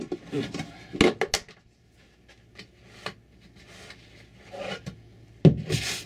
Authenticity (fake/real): real